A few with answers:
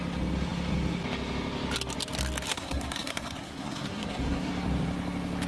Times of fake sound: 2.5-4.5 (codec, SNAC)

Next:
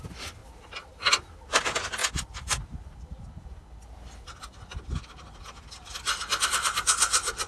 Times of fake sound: none

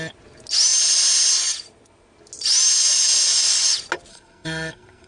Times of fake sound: 4.1-5.1 (codec, SNAC)

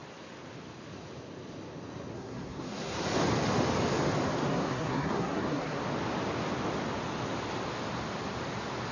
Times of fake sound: 2.1-3.0 (codec, SNAC); 4.5-5.8